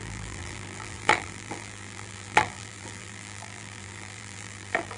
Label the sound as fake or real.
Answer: fake